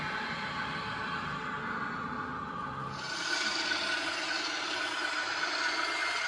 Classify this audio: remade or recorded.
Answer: recorded